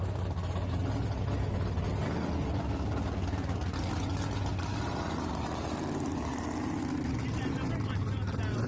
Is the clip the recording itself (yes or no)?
yes